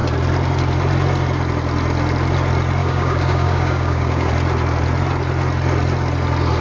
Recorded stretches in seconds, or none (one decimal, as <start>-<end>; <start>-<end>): 0.0-2.8; 4.3-6.6